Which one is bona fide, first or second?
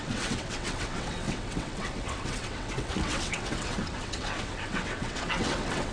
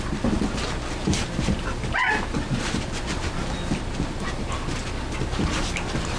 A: second